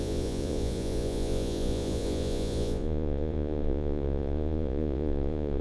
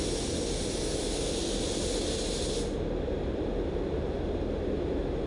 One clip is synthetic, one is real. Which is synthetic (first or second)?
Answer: first